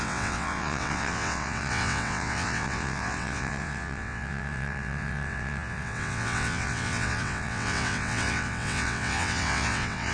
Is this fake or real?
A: fake